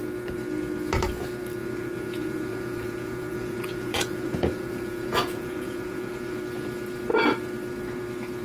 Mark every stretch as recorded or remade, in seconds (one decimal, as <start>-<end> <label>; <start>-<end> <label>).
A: 0.0-1.6 recorded; 1.6-6.4 remade; 6.4-8.4 recorded